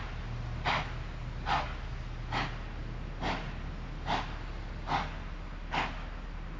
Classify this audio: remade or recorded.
recorded